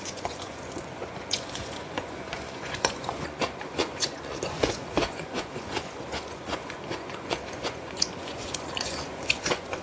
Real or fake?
fake